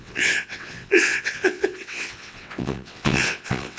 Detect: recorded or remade remade